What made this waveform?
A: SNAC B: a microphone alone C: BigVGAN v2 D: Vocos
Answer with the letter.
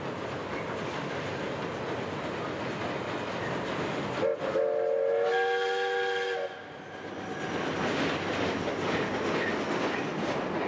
B